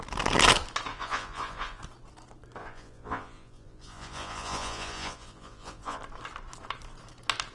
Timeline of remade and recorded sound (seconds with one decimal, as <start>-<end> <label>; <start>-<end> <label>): 0.0-0.9 recorded; 0.9-1.8 remade; 1.8-2.6 recorded; 2.6-6.0 remade; 6.0-7.5 recorded